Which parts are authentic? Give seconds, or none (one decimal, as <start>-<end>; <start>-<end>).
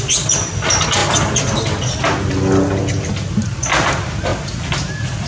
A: 0.0-5.3